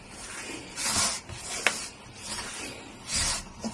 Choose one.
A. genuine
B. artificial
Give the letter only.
A